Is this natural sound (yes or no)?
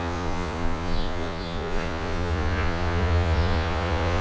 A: no